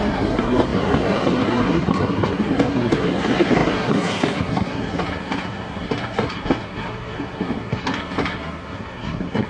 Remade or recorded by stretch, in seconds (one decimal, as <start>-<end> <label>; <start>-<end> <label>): 0.0-9.5 remade